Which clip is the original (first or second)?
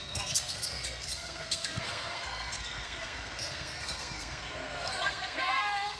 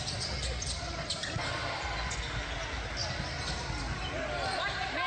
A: second